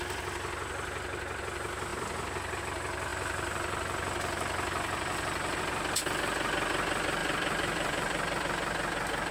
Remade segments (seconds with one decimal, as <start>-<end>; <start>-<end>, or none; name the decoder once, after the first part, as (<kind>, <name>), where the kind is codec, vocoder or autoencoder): 1.9-2.6 (vocoder, BigVGAN v2); 3.1-5.6; 7.2-8.4